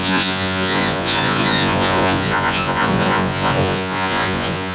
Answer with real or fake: fake